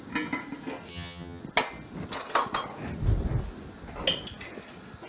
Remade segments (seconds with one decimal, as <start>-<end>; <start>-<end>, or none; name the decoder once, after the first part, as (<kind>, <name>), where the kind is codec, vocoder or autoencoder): 0.9-1.4 (vocoder, HiFi-GAN)